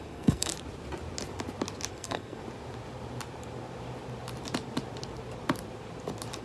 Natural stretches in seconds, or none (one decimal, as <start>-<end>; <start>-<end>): 0.5-1.9; 2.4-6.4